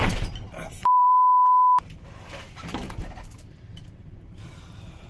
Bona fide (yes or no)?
no